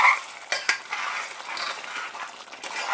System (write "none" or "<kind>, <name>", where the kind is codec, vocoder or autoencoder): none